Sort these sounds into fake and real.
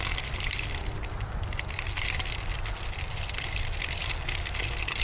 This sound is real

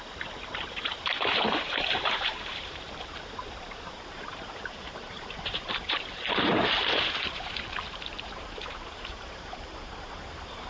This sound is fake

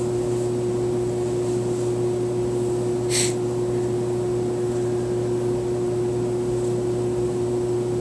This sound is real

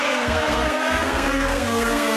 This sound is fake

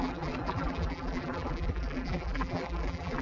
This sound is fake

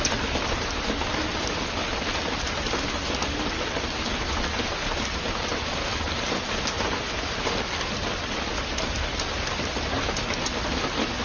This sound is real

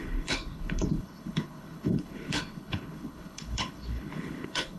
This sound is fake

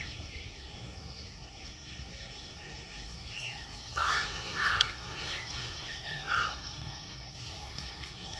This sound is fake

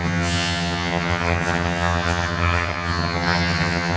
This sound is fake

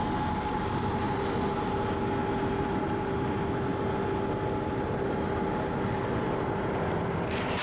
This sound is real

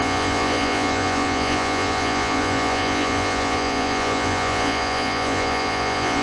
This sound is fake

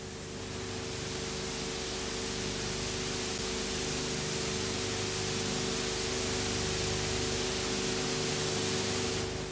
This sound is real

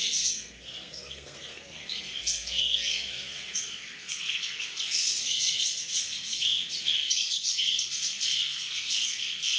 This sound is fake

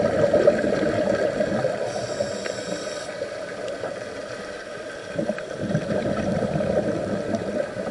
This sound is real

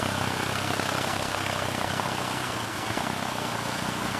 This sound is fake